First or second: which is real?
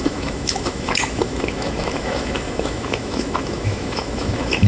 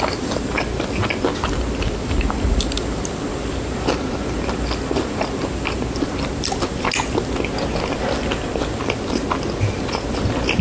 second